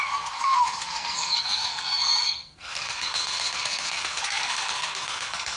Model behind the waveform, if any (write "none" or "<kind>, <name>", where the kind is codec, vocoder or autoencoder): codec, SNAC